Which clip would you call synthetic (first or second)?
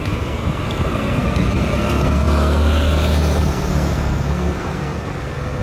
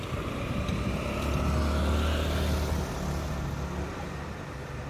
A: first